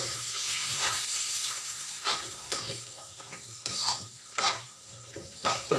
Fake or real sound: fake